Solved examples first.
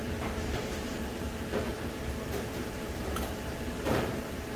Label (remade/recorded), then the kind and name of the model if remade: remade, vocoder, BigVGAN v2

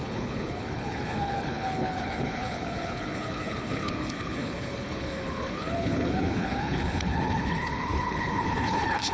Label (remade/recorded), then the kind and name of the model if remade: remade, codec, HILCodec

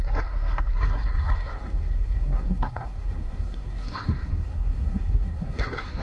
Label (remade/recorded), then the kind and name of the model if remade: remade, codec, SNAC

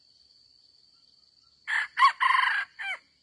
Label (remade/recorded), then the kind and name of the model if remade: recorded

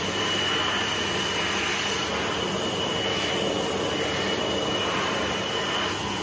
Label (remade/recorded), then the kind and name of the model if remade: recorded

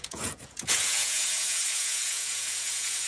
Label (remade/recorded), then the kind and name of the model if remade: remade, vocoder, Vocos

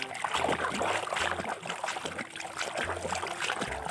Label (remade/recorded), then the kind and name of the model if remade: recorded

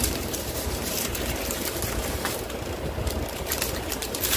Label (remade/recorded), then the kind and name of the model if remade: remade, vocoder, BigVGAN v2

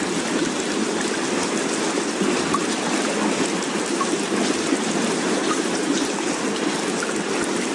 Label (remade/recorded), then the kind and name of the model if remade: recorded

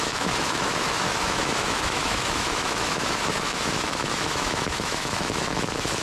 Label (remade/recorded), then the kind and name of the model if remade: remade, autoencoder, DAC-VAE